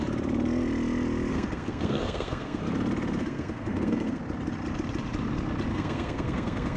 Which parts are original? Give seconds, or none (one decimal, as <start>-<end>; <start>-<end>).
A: 0.0-1.3; 2.6-3.2; 4.2-5.7